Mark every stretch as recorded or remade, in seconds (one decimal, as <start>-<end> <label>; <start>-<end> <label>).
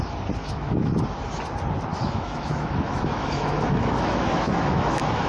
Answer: 0.0-0.4 recorded; 0.4-1.0 remade; 1.0-1.9 recorded; 1.9-5.3 remade